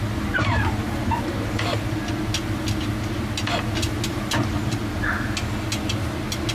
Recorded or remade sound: recorded